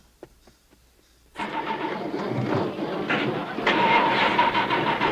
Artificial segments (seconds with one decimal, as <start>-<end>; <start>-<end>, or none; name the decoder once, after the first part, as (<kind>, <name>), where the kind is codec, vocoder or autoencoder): 0.8-2.1 (vocoder, BigVGAN v2); 3.4-4.4